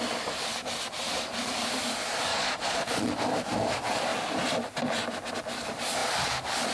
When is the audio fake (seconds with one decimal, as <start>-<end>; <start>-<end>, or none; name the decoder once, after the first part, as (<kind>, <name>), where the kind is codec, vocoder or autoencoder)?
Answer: 2.3-3.1 (vocoder, Vocos)